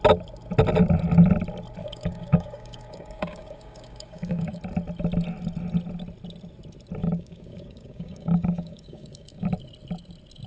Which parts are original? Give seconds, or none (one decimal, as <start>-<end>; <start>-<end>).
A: 0.0-1.8; 4.6-7.0; 9.5-10.5